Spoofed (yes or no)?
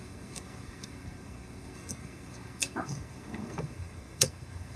yes